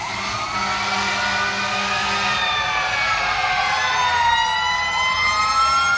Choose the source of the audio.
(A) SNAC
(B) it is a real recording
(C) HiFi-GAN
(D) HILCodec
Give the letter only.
B